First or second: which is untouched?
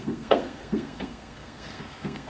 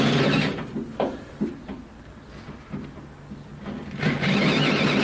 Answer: second